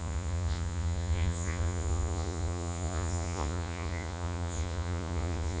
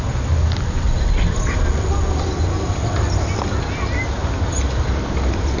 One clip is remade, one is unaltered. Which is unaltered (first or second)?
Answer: second